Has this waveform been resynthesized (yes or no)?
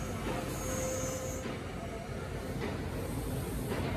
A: no